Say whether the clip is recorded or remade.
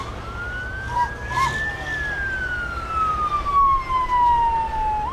recorded